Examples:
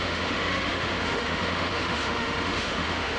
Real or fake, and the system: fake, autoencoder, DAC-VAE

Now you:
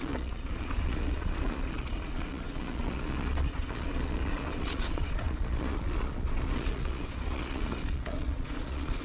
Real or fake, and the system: fake, vocoder, Vocos